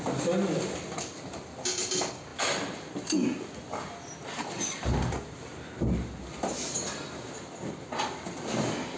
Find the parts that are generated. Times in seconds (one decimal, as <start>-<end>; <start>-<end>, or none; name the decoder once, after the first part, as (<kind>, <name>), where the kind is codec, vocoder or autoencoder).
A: none